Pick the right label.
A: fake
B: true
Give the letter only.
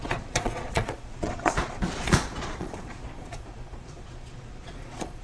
A